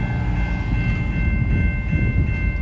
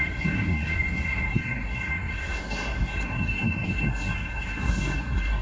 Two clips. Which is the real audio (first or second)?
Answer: first